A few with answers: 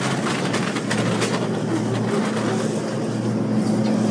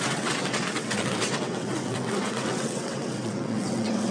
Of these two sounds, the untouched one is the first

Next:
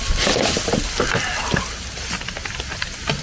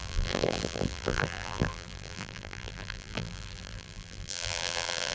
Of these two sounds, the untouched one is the first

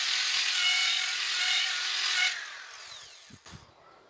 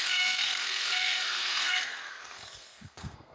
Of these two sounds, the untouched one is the first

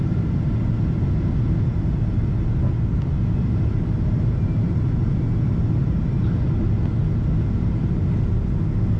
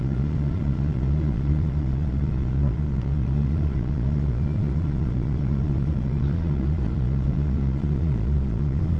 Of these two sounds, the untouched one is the first